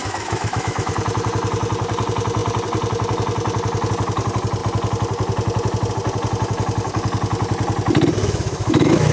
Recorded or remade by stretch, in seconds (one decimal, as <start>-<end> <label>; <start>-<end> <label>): 0.0-0.9 remade; 0.9-8.2 recorded; 8.2-9.1 remade